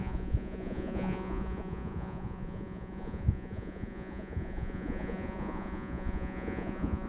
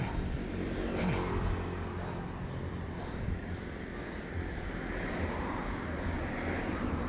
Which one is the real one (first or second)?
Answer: second